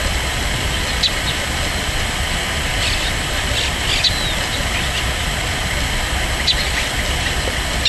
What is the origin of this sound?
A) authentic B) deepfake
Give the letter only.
A